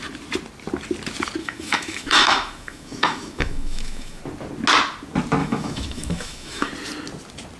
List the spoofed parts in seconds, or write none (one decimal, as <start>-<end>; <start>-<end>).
1.4-4.2; 5.4-6.7